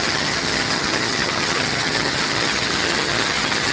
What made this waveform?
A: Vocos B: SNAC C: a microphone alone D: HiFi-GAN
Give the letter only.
D